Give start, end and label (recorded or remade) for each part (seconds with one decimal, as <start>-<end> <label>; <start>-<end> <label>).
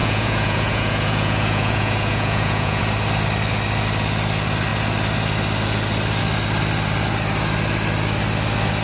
0.0-2.8 remade; 2.8-8.8 recorded